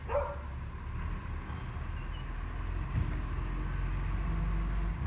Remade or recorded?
recorded